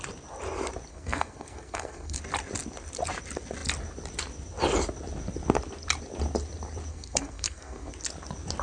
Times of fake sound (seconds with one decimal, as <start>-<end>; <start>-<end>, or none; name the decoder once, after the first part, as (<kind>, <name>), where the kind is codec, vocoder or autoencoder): 0.9-2.2 (codec, SNAC); 6.9-7.9